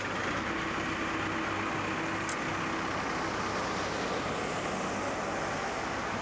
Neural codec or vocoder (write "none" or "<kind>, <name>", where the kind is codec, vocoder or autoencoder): none